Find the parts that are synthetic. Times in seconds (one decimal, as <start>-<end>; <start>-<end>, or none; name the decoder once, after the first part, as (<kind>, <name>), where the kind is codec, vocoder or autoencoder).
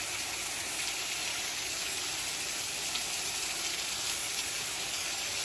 1.3-2.0 (codec, DAC); 3.7-5.4